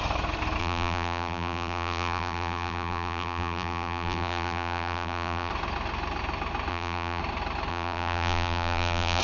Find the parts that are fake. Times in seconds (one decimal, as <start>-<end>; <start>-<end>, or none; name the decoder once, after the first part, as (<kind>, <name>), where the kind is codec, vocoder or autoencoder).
0.6-5.5 (vocoder, BigVGAN v2); 6.7-7.2; 7.7-9.2